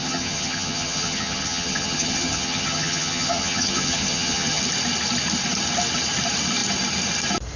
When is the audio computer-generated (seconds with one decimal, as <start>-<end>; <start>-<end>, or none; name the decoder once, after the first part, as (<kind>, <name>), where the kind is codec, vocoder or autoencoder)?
0.0-4.6 (vocoder, HiFi-GAN)